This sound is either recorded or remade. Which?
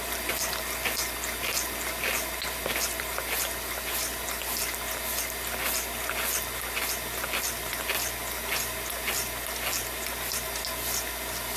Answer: recorded